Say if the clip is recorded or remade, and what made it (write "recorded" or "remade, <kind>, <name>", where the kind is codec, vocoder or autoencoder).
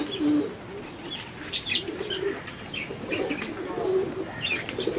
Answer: recorded